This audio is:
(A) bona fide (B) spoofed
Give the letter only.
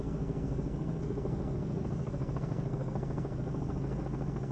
B